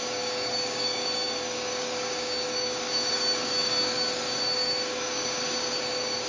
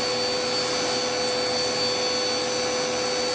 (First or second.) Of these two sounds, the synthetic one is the first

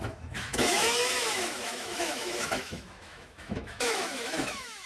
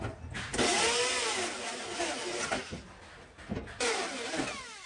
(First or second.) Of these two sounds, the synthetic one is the first